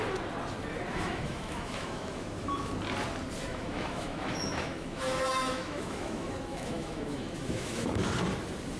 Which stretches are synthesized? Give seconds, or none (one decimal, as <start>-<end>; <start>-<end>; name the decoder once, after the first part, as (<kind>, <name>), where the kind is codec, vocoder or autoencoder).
0.9-2.7 (autoencoder, DAC-VAE); 3.5-8.0